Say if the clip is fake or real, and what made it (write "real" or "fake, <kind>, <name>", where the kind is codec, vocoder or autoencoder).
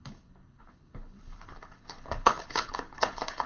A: fake, codec, HILCodec